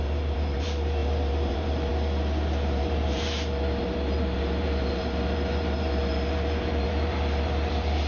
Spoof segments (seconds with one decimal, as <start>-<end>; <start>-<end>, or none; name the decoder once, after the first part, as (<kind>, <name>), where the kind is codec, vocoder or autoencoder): 0.0-1.9 (vocoder, BigVGAN v2); 2.6-8.1